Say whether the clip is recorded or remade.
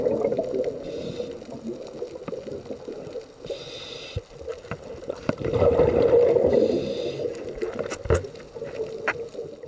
recorded